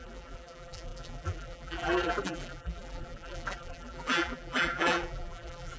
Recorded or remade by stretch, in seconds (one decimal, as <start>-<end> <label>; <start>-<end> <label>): 0.0-5.8 remade